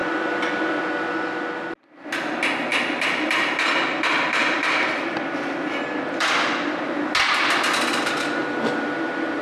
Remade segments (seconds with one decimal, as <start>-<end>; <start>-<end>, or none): 0.0-0.8; 2.7-3.5; 4.4-6.3; 8.4-9.4